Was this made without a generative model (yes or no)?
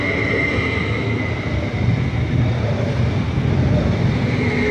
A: yes